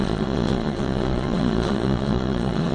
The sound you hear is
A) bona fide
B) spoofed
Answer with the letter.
B